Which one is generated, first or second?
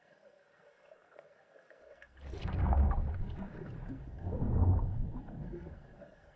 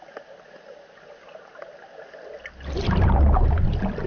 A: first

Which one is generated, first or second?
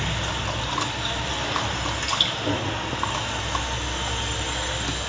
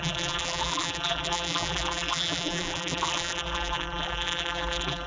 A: second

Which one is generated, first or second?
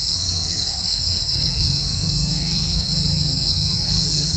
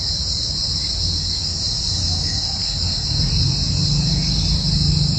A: first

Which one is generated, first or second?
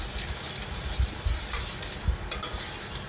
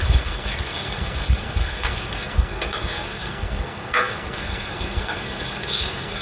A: second